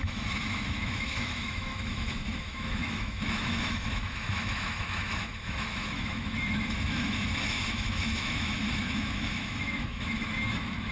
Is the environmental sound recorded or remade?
remade